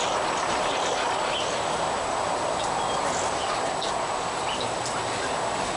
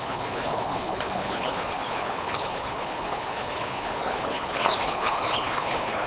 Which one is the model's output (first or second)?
second